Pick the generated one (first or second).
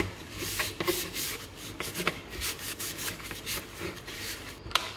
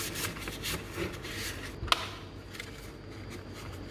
first